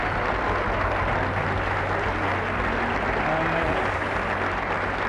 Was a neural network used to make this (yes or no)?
no